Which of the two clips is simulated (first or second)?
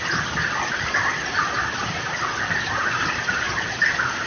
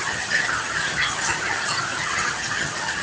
second